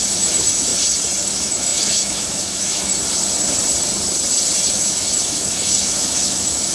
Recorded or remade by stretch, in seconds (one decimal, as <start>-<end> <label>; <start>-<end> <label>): 0.0-0.7 remade; 0.7-1.2 recorded; 1.2-2.9 remade; 2.9-4.7 recorded; 4.7-6.7 remade